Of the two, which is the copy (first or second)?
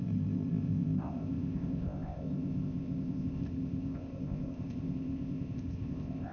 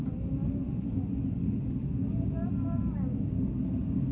first